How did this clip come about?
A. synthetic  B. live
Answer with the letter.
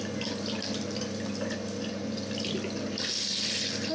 B